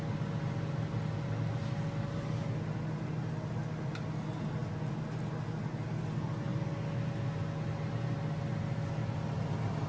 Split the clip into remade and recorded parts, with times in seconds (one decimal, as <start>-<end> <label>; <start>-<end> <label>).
0.0-9.9 recorded